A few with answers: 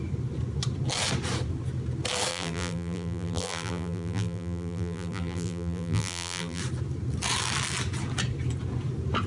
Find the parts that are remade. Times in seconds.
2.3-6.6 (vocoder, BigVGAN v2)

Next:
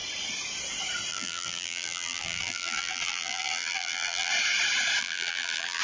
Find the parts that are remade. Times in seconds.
1.1-4.3 (vocoder, BigVGAN v2); 5.0-5.8

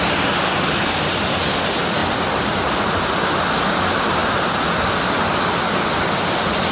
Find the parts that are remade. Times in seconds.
none